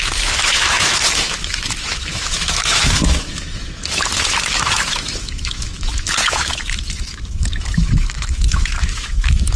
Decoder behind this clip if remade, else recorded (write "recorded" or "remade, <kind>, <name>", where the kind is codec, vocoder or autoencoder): remade, autoencoder, DAC-VAE